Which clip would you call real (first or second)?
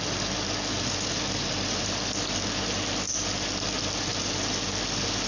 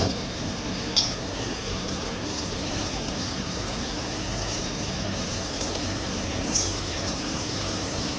first